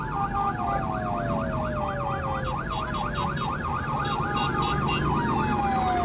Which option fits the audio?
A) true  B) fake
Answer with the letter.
A